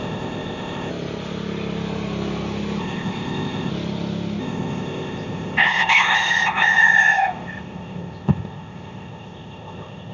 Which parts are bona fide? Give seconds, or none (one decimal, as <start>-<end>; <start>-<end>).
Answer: 0.9-2.8; 3.7-4.4

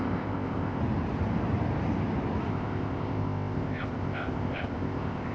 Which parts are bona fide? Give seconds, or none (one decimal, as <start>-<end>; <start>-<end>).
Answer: 0.8-2.5

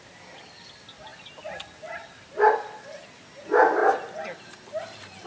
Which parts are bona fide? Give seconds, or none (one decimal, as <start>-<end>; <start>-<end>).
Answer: 0.0-5.3

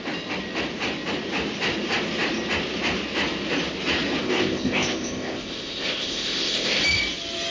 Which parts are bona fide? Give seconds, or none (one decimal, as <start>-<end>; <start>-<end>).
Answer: 0.0-4.2; 6.8-7.5

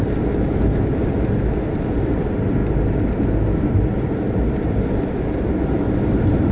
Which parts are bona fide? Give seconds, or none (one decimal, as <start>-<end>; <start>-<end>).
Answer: 0.0-6.5